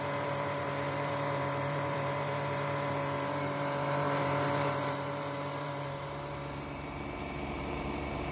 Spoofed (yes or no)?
yes